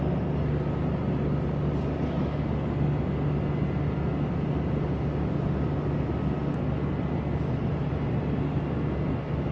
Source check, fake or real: real